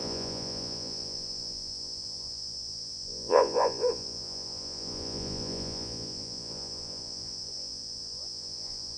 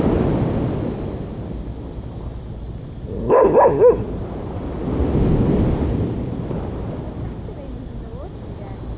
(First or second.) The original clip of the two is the second